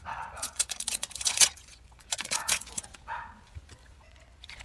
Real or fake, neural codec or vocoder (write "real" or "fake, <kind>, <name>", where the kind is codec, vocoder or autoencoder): fake, vocoder, Vocos